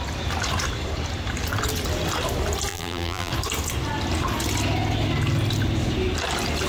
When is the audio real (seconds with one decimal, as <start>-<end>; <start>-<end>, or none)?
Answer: 0.0-2.7; 3.3-6.7

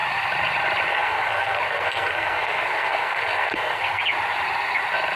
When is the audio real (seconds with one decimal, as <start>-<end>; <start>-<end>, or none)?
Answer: 0.0-0.9; 4.0-5.2

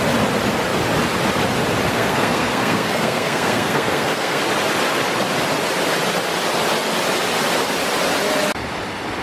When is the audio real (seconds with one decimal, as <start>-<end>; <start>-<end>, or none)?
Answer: 0.0-1.9; 4.4-9.2

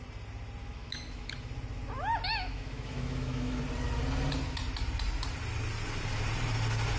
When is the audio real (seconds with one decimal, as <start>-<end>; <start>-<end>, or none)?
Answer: 0.0-0.6; 1.3-2.3; 3.6-7.0

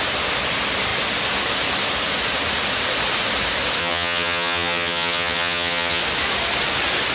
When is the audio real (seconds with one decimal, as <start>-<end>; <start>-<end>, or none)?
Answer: 0.0-3.8; 6.0-7.1

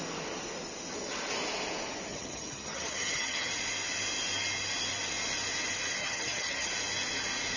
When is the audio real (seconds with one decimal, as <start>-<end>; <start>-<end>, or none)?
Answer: 0.0-2.1; 3.5-6.0; 6.7-7.6

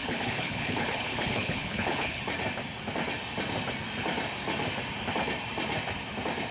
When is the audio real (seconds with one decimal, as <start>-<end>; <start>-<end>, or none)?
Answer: 2.2-6.5

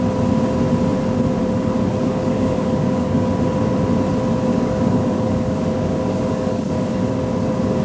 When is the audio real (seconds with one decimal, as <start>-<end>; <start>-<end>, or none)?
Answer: 0.0-1.9; 3.3-4.5; 7.1-7.8